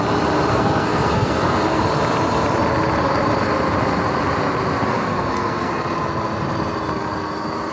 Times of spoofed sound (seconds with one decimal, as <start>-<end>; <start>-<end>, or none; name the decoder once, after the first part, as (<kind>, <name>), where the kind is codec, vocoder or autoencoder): 0.5-1.8 (codec, SNAC); 4.9-5.7